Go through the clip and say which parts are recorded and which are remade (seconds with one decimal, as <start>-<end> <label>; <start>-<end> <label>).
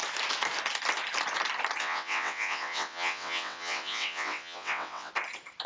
0.0-1.8 recorded; 1.8-5.1 remade; 5.1-5.7 recorded